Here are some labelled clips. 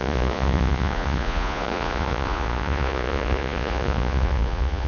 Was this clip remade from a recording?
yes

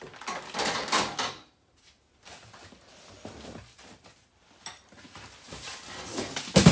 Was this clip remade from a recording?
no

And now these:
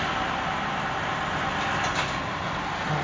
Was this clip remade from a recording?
no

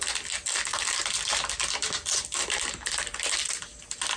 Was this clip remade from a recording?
no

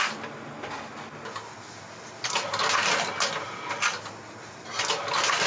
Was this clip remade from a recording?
no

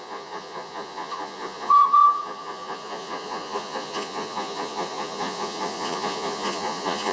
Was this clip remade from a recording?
yes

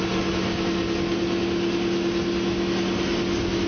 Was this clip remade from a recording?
no